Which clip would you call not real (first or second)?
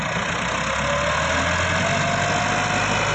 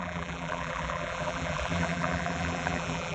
second